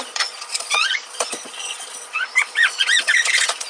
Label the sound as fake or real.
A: fake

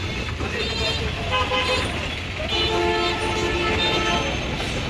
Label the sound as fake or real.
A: real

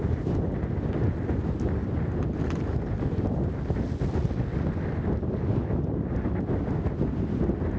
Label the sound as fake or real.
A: real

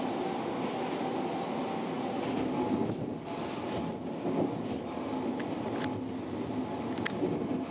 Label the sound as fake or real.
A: real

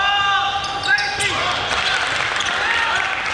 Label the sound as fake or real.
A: real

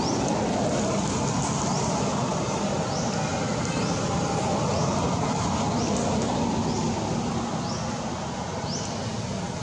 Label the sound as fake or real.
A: real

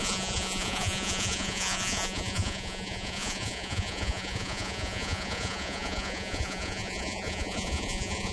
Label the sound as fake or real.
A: fake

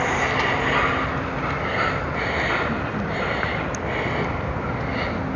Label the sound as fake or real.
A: real